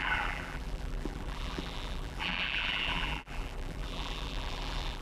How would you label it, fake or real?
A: fake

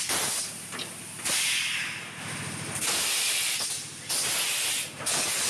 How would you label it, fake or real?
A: real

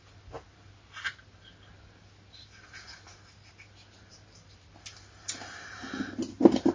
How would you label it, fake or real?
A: real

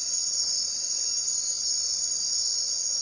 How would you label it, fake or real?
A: fake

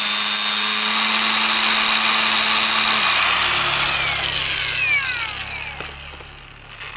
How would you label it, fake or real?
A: real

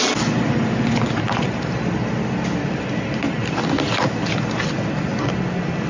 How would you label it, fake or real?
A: real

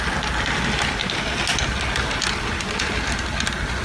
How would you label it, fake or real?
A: real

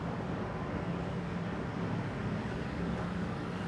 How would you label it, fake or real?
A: fake